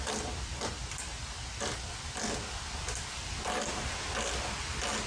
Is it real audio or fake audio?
real